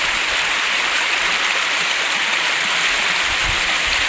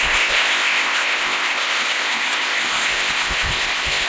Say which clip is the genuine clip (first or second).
first